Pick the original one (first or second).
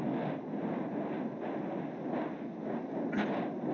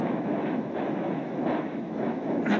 first